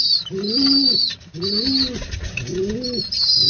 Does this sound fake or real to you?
real